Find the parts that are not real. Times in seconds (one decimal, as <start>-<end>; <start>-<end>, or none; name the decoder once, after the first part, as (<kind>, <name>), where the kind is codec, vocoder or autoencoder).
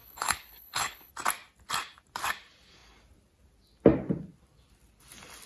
0.0-1.1 (codec, HILCodec)